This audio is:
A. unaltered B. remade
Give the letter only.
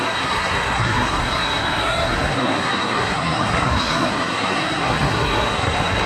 B